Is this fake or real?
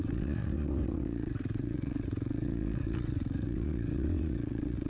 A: fake